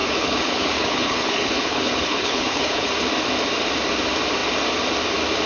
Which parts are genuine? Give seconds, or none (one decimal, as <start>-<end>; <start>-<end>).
2.9-5.5